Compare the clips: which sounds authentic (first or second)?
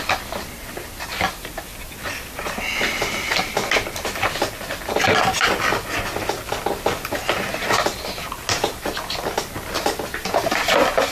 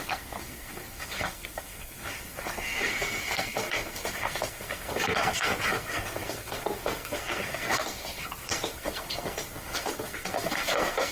first